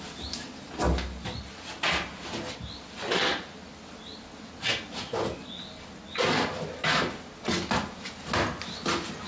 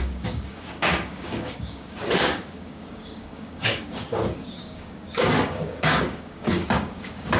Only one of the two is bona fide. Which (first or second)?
first